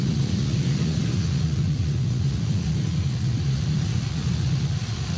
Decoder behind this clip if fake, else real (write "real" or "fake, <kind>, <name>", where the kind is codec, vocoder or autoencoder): fake, vocoder, Vocos